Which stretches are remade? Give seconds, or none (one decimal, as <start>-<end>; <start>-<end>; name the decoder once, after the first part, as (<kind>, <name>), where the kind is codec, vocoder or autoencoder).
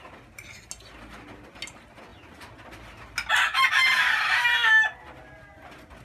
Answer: none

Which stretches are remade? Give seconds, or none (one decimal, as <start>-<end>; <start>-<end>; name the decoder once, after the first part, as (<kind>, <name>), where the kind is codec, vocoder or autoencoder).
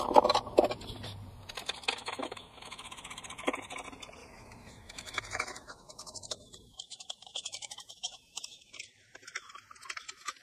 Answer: 2.0-3.2 (autoencoder, DAC-VAE); 4.2-8.7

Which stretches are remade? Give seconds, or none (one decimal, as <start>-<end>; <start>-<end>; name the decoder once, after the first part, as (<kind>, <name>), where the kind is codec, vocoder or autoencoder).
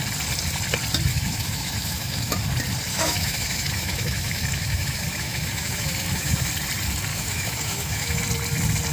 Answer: 1.1-2.4 (autoencoder, DAC-VAE); 2.9-6.5; 7.1-8.2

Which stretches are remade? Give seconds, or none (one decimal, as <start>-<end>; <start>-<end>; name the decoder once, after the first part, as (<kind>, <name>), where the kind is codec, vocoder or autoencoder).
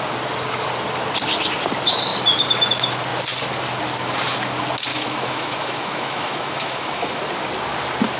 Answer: 4.9-7.2 (autoencoder, DAC-VAE)